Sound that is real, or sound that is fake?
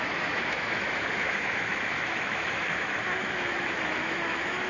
fake